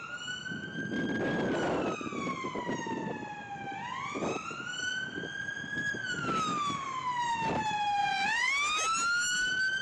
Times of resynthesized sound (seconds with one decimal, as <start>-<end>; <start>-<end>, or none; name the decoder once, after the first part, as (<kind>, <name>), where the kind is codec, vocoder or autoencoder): 8.0-8.5 (vocoder, Vocos)